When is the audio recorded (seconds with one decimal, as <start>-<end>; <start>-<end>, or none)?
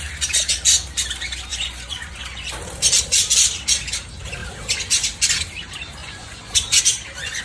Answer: 0.0-1.5; 2.2-6.0; 6.8-7.4